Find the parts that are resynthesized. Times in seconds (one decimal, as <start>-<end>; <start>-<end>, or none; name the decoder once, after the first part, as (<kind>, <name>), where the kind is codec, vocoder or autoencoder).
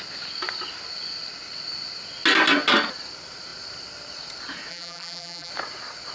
4.7-5.5 (vocoder, BigVGAN v2)